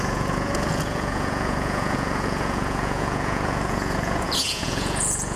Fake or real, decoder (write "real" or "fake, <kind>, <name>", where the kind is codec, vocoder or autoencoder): fake, vocoder, Vocos